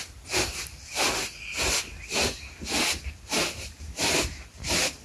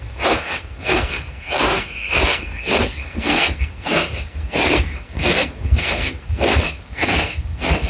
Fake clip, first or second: second